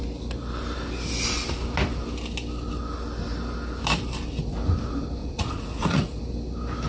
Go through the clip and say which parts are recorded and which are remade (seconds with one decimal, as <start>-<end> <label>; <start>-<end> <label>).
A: 0.0-5.2 recorded; 5.2-6.2 remade; 6.2-6.9 recorded